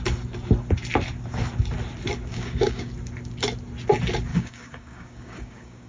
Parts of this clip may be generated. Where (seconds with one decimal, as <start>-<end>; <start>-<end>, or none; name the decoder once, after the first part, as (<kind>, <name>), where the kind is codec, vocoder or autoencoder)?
2.3-2.9 (codec, DAC); 4.3-5.9